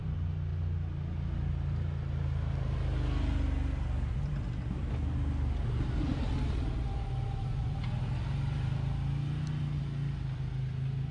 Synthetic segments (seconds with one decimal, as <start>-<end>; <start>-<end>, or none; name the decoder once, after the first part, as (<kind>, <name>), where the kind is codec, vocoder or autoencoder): none